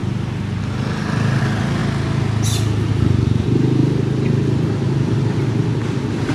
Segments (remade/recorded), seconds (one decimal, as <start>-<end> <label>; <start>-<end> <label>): 0.0-6.3 recorded